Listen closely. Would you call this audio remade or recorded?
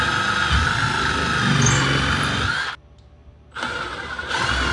recorded